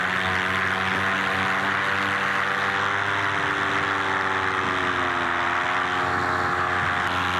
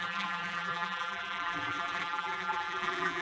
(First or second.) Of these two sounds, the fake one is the second